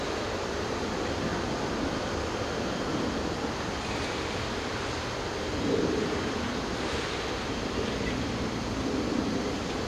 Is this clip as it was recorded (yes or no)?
no